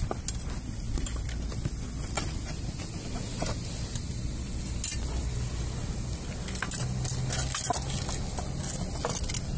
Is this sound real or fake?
real